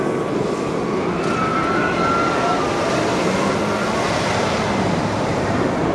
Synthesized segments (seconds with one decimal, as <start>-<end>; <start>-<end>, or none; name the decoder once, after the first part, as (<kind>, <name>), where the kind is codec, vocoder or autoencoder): none